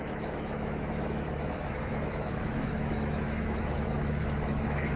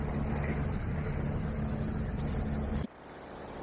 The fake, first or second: first